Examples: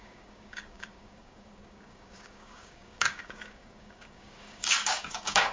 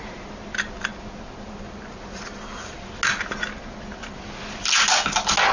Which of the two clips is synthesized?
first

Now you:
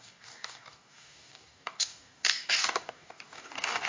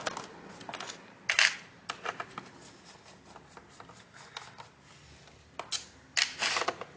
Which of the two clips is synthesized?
first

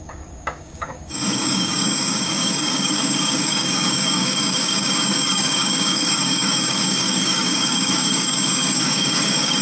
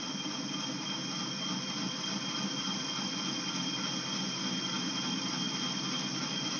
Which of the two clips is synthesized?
first